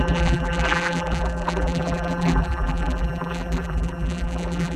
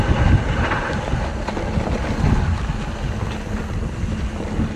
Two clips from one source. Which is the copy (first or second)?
first